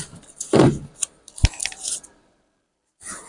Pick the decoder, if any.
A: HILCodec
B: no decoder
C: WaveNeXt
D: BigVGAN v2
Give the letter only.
D